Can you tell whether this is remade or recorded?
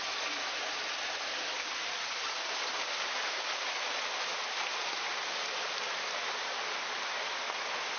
recorded